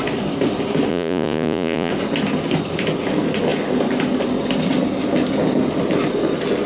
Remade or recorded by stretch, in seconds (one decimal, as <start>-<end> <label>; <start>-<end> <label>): 0.0-0.9 recorded; 0.9-1.9 remade; 1.9-6.7 recorded